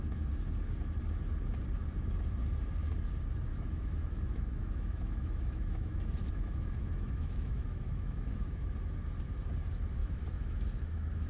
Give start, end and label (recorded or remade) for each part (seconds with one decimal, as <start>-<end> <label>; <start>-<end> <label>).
0.0-3.5 recorded; 3.5-8.7 remade; 8.7-10.0 recorded; 10.0-11.3 remade